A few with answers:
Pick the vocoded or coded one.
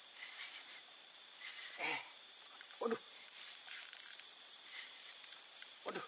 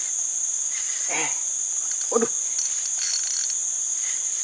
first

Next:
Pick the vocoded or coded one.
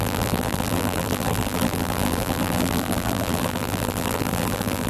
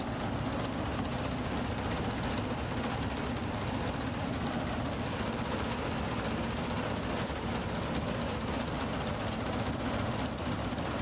first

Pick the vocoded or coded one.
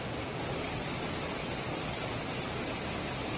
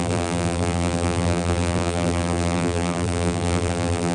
second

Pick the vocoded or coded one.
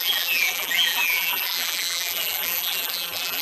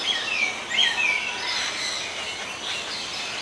first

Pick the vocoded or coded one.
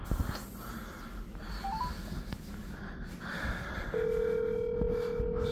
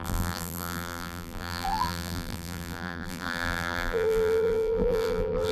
second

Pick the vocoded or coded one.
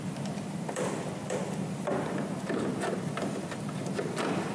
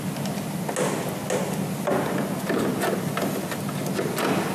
first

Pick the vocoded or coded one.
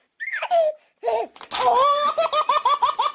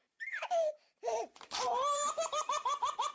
second